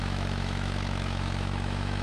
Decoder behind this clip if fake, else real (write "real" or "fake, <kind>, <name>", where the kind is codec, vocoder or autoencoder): fake, autoencoder, DAC-VAE